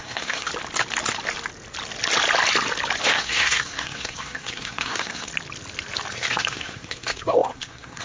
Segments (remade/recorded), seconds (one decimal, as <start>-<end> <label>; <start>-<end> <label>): 0.0-0.5 remade; 0.5-3.0 recorded; 3.0-5.3 remade; 5.3-6.1 recorded; 6.1-8.0 remade